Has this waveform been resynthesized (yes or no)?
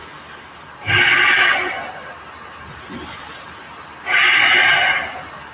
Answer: no